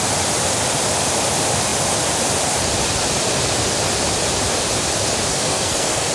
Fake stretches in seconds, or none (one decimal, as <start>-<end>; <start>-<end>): 5.3-6.1

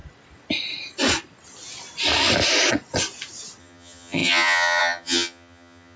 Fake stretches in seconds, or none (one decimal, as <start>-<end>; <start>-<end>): 3.6-6.0

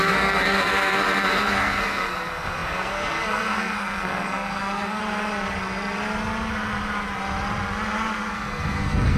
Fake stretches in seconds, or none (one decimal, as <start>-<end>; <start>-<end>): 0.0-5.0; 8.3-9.2